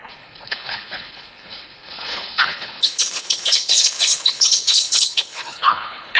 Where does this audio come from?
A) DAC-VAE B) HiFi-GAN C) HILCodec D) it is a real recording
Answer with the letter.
C